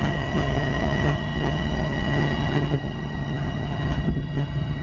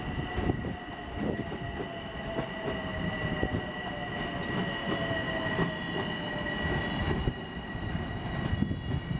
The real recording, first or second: second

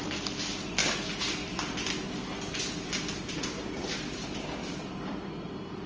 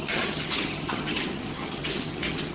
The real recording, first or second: first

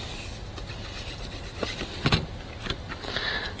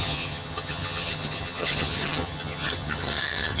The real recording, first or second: first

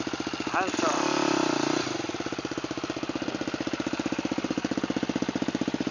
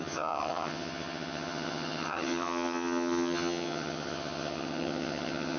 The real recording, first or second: first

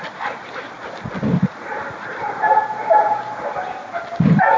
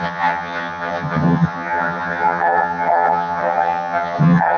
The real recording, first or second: first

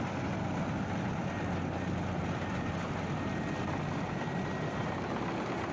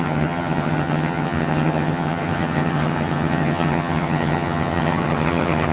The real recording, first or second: first